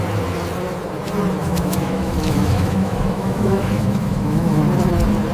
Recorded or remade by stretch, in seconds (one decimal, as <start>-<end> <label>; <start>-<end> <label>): 0.0-1.4 recorded; 1.4-4.6 remade; 4.6-5.3 recorded